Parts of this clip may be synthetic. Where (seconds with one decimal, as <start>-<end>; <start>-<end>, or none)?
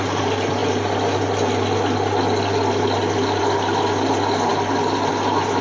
none